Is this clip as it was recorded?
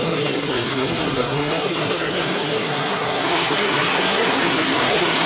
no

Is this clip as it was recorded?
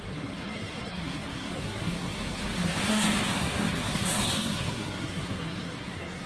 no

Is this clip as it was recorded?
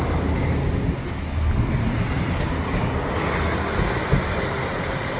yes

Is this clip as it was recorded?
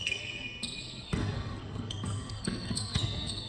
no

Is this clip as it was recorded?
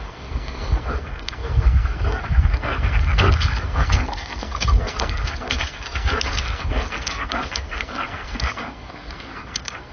no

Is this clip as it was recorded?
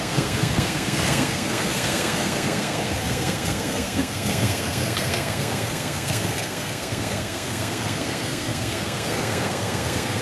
no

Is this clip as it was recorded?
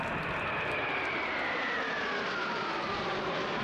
yes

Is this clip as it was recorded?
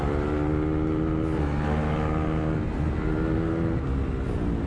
yes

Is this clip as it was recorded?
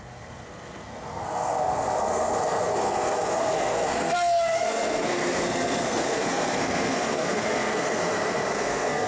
no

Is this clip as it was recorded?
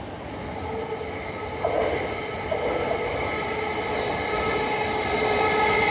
yes